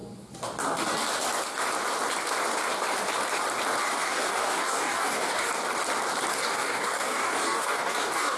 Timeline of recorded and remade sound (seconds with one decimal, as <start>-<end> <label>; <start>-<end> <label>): 0.0-3.8 recorded; 3.8-5.5 remade; 5.5-6.3 recorded; 6.3-8.4 remade